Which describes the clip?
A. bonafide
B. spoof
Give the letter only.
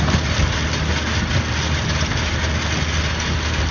A